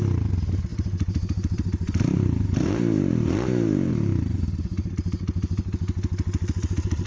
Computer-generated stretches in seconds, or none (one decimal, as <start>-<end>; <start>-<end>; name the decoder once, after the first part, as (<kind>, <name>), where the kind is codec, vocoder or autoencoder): 0.7-4.9 (vocoder, BigVGAN v2)